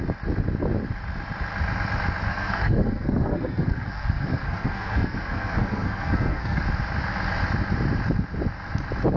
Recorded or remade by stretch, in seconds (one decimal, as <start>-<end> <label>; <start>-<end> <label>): 0.0-2.3 recorded; 2.3-6.6 remade; 6.6-9.2 recorded